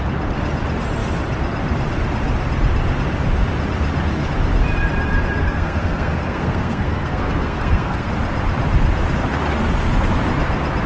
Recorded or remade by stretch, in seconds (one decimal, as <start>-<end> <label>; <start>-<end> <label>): 0.0-5.4 recorded; 5.4-8.1 remade; 8.1-10.9 recorded